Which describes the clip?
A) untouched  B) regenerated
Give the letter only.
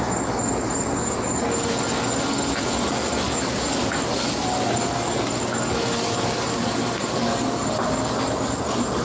A